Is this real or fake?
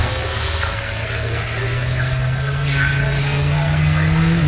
fake